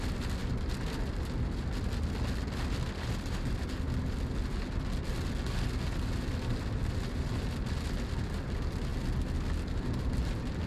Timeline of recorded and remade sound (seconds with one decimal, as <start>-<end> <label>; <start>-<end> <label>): 0.0-10.7 recorded